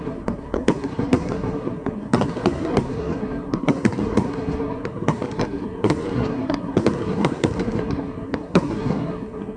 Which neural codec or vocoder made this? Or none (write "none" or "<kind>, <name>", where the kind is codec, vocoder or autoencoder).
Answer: codec, SNAC